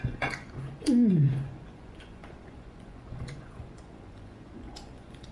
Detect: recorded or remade remade